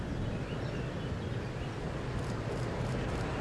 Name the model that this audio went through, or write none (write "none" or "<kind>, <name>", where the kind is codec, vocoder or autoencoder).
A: none